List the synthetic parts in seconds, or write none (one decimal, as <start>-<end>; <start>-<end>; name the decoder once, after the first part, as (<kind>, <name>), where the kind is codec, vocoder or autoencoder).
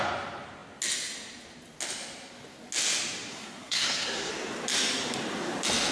3.3-4.3 (codec, SNAC)